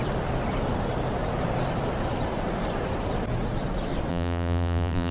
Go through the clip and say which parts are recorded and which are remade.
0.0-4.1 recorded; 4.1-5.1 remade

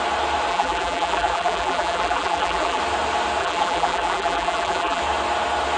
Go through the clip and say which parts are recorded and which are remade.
0.0-0.5 recorded; 0.5-2.8 remade; 2.8-3.4 recorded; 3.4-5.0 remade; 5.0-5.8 recorded

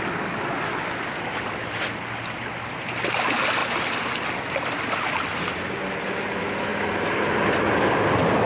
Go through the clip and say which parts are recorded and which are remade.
0.0-3.6 recorded; 3.6-5.4 remade; 5.4-8.5 recorded